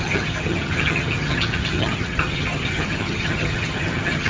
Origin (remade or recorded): remade